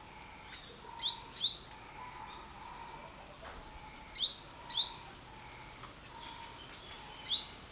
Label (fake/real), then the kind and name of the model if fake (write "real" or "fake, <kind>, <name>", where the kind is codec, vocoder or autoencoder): real